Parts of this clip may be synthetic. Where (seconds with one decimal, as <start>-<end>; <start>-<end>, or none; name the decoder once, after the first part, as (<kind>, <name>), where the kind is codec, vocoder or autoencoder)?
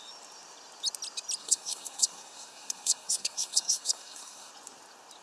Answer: 1.4-4.5 (codec, SNAC)